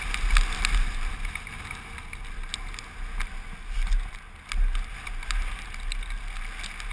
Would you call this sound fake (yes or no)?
no